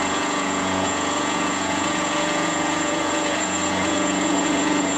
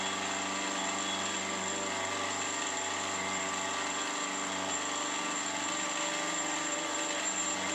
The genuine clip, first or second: second